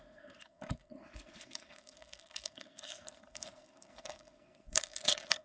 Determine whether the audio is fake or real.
fake